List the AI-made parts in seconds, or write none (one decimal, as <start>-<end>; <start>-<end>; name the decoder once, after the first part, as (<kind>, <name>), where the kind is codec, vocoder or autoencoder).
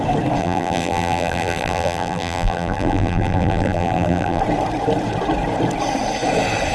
0.4-4.4 (vocoder, BigVGAN v2)